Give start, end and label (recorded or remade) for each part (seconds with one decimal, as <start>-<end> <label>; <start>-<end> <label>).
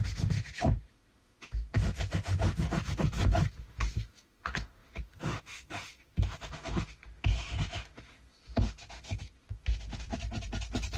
0.0-10.2 remade; 10.2-11.0 recorded